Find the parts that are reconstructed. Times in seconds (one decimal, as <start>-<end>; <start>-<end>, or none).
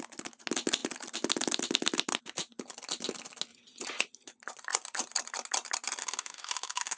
6.0-7.0